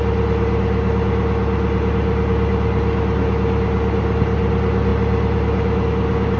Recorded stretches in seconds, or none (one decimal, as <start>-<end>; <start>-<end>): 0.0-6.4

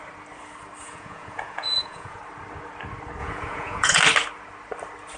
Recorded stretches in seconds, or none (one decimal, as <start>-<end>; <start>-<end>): 0.0-0.8; 2.2-3.2; 4.0-5.2

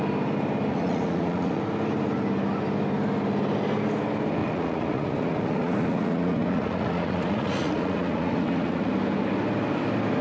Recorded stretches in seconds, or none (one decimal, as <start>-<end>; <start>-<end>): 0.0-0.7; 1.6-4.4; 8.9-10.2